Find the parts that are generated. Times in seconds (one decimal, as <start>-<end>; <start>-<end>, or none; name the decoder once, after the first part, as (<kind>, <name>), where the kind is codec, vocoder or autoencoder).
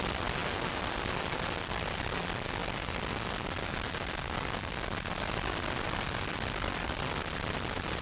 none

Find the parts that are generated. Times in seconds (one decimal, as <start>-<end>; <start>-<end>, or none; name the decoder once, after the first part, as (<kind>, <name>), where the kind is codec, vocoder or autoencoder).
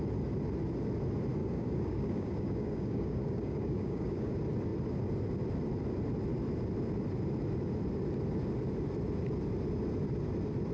1.4-4.3 (codec, DAC)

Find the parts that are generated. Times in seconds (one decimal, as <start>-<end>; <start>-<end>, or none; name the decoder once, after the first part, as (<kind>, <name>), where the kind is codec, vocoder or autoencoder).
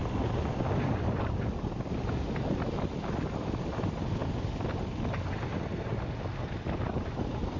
none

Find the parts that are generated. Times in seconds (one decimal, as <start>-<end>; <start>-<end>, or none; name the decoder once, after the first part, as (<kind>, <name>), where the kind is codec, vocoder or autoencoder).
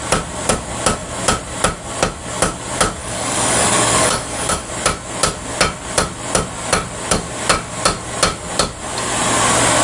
3.0-4.7 (codec, DAC)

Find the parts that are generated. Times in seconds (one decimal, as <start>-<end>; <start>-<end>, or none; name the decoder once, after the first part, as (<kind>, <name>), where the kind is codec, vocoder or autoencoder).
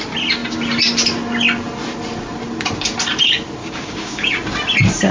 3.6-4.3 (codec, DAC)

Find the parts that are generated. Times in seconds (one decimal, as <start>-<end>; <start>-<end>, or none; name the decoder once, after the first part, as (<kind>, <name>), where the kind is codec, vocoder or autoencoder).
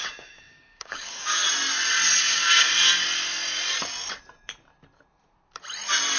0.0-1.4 (codec, DAC); 2.2-2.7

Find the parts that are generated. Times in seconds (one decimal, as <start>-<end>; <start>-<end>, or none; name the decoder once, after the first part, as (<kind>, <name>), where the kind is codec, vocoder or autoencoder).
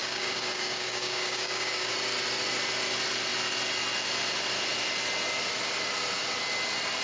0.0-1.9 (codec, DAC)